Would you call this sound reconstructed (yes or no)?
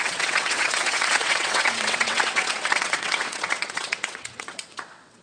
yes